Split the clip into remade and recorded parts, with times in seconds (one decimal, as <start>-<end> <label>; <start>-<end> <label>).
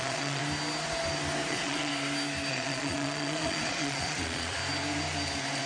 0.0-0.4 remade; 0.4-1.5 recorded; 1.5-1.9 remade; 1.9-2.5 recorded; 2.5-4.6 remade; 4.6-5.7 recorded